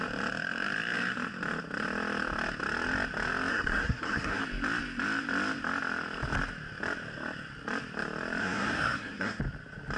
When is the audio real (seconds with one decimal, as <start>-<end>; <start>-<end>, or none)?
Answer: 0.0-3.5; 4.4-8.4; 9.4-10.0